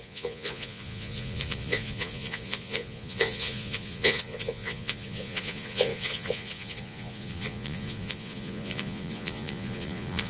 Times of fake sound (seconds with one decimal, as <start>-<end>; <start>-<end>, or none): 0.0-10.3